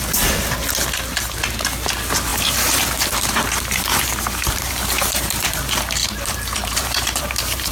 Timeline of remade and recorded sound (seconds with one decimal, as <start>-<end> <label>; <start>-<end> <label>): 0.0-2.3 recorded; 2.3-5.6 remade; 5.6-6.0 recorded; 6.0-7.7 remade